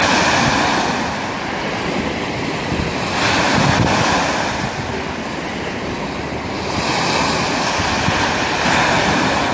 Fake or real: real